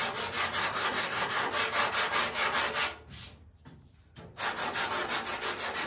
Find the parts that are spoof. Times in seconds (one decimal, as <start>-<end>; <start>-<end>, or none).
0.6-1.5